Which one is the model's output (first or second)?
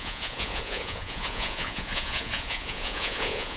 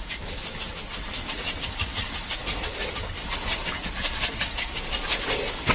first